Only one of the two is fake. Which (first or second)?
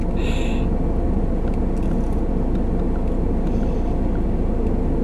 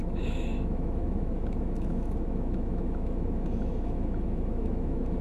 second